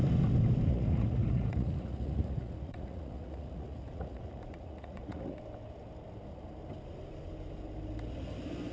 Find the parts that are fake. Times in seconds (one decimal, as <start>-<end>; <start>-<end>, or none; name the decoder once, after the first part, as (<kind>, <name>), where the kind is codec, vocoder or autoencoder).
0.7-5.4 (vocoder, Vocos)

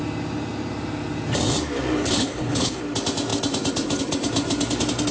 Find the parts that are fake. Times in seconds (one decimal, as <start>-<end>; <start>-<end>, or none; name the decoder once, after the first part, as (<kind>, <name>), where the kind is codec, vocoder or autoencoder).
2.0-2.8 (codec, HILCodec)